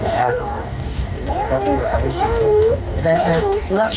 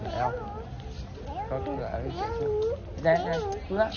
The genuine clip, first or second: second